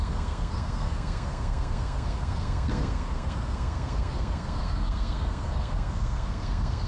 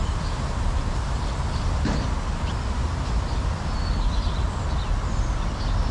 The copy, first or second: first